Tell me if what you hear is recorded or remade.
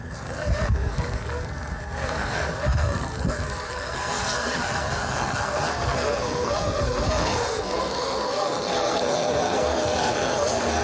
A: remade